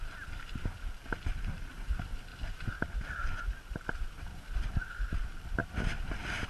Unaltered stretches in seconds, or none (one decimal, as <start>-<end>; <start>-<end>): 0.0-5.6